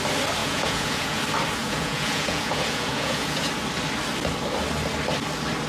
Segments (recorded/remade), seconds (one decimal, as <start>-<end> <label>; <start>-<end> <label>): 0.0-0.4 recorded; 0.4-1.2 remade; 1.2-1.6 recorded; 1.6-3.5 remade; 3.5-5.7 recorded